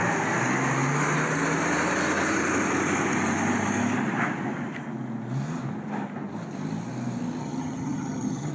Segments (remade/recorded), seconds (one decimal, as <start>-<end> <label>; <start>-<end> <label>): 0.0-7.4 recorded; 7.4-8.5 remade